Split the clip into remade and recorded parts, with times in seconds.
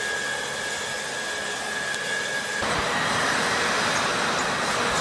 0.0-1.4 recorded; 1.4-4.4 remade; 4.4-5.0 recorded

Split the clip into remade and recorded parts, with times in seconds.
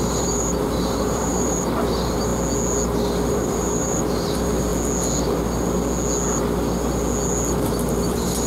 0.0-2.3 remade; 2.3-3.3 recorded; 3.3-4.7 remade; 4.7-7.5 recorded; 7.5-8.5 remade